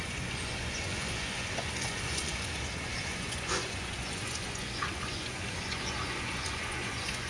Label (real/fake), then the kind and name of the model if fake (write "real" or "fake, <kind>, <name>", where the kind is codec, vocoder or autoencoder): fake, vocoder, Vocos